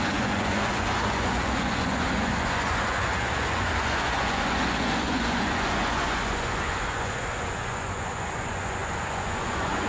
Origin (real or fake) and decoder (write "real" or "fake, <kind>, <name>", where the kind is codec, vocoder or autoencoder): fake, vocoder, Vocos